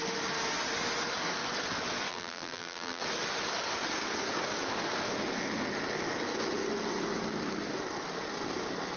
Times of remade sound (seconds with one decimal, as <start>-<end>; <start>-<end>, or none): 2.1-3.0